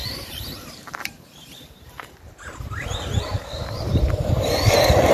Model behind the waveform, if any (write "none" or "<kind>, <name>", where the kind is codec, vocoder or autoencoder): vocoder, BigVGAN v2